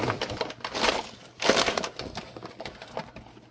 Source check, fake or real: real